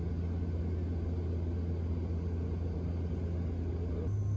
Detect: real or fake real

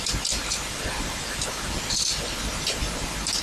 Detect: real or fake real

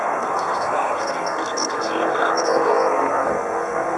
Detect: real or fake fake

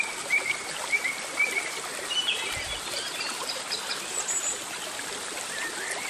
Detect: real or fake real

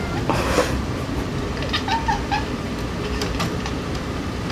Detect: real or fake fake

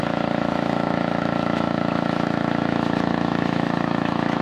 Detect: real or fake fake